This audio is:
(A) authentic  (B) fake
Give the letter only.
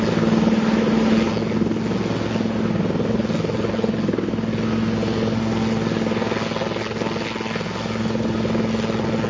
A